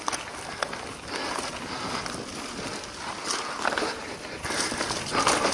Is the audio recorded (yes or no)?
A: yes